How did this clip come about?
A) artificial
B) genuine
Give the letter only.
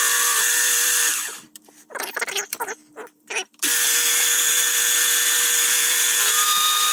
A